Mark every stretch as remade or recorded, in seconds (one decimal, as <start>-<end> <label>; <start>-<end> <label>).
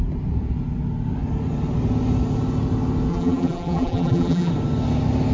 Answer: 0.0-3.1 recorded; 3.1-4.5 remade; 4.5-5.3 recorded